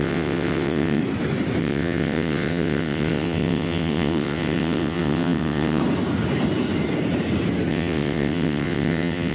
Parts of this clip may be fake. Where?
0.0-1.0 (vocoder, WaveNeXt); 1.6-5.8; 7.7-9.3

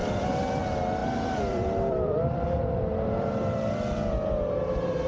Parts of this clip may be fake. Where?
0.0-0.6 (vocoder, BigVGAN v2); 1.0-4.1

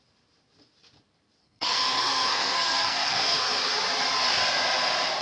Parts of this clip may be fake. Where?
1.4-3.5 (codec, SNAC)

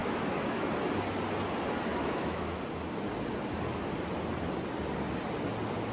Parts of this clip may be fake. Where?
0.0-0.6 (autoencoder, DAC-VAE); 1.9-2.6